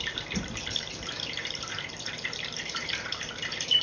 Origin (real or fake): fake